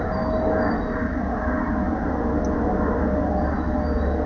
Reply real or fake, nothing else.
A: real